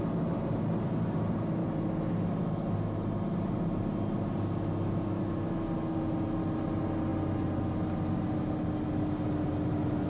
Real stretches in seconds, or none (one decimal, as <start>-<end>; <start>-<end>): 0.0-10.1